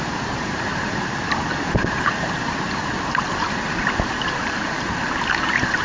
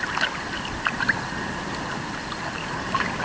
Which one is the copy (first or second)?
first